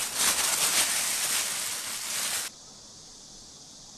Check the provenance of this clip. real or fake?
real